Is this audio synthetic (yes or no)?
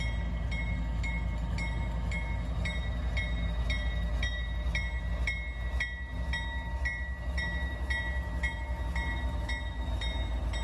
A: no